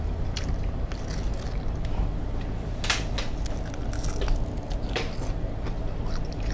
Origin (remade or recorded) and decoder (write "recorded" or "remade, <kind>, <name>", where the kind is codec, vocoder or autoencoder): recorded